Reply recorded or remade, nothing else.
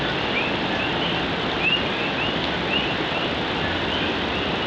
recorded